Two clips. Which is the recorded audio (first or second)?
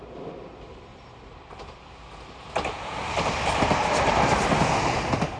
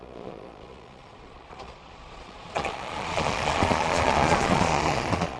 first